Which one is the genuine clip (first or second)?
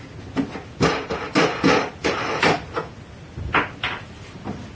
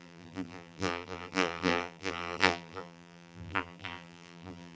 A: first